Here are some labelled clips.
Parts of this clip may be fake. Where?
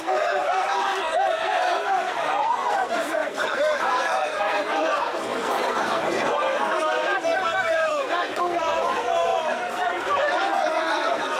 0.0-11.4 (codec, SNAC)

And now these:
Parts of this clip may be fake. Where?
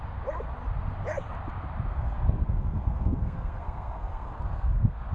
1.9-5.1 (codec, SNAC)